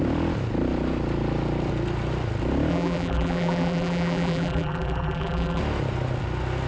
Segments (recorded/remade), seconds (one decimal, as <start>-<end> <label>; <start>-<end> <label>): 0.0-2.7 recorded; 2.7-5.6 remade; 5.6-6.7 recorded